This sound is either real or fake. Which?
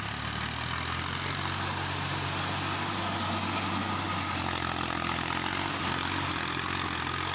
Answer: real